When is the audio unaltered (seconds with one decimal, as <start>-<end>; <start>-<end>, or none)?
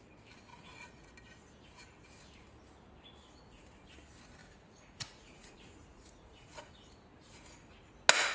0.0-0.5; 1.1-4.4; 6.7-8.3